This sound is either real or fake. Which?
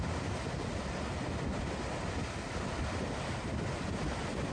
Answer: real